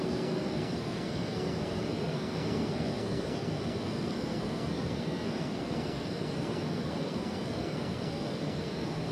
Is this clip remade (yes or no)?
yes